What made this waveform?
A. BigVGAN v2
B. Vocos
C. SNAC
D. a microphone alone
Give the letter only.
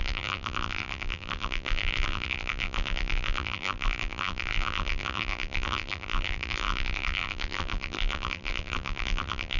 A